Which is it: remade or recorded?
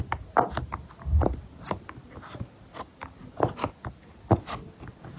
recorded